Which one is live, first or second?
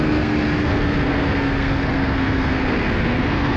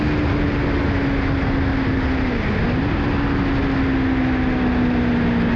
second